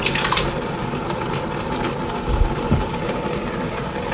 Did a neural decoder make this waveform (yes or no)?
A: yes